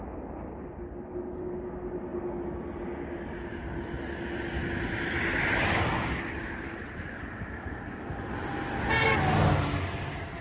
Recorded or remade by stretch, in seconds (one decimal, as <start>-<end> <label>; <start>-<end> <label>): 0.0-10.4 recorded